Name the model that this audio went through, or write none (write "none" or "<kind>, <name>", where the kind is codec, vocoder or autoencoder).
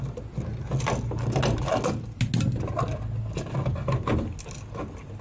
none